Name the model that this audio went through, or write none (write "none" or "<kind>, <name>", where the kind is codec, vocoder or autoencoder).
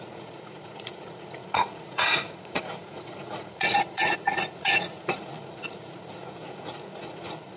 vocoder, Vocos